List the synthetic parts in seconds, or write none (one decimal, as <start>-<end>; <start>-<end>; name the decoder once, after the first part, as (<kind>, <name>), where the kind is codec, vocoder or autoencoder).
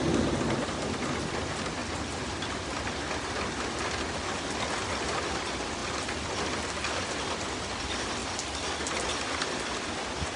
none